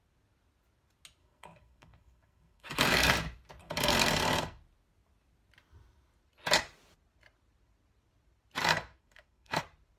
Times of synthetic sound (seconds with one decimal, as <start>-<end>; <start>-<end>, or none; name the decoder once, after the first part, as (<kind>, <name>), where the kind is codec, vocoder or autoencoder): 1.2-3.1 (codec, SNAC); 3.6-4.6; 8.6-9.6